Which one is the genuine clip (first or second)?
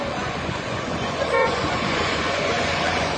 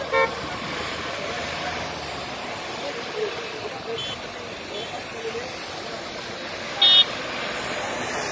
second